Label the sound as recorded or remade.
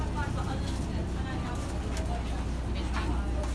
recorded